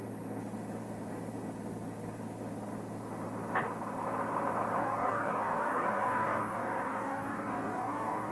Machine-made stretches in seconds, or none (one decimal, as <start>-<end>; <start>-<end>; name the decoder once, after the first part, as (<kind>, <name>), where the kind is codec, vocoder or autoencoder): 4.8-8.3 (codec, DAC)